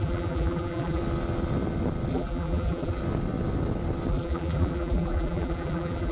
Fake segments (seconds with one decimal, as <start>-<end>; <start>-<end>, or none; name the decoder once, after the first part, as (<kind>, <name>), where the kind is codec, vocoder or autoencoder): 0.0-1.0 (vocoder, BigVGAN v2); 2.1-3.0; 4.1-6.1